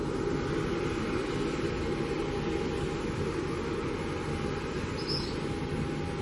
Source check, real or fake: real